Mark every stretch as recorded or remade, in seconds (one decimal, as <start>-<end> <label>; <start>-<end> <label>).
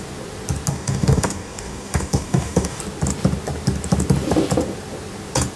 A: 0.0-0.7 recorded; 0.7-2.8 remade; 2.8-5.6 recorded